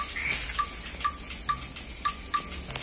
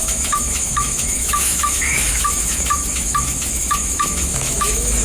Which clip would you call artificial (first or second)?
second